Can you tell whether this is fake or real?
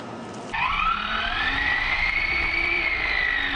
fake